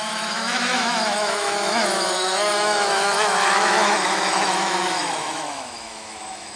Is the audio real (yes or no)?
no